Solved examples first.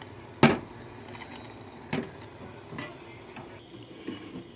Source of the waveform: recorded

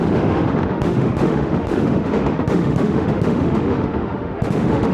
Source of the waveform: remade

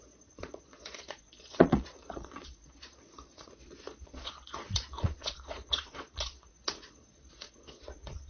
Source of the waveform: remade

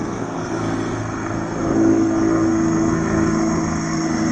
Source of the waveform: remade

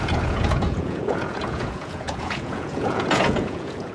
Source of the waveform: remade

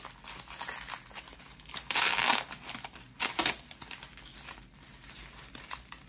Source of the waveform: recorded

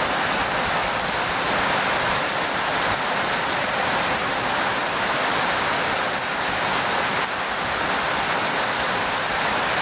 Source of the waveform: recorded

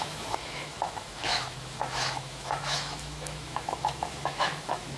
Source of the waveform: remade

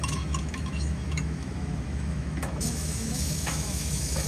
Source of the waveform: remade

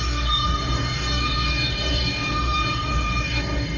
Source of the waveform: remade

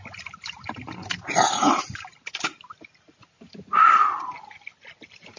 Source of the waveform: recorded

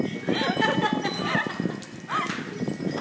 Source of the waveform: recorded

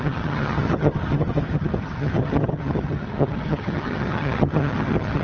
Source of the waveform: remade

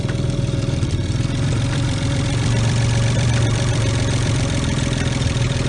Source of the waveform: remade